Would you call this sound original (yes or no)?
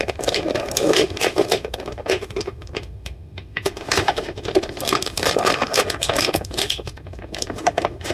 no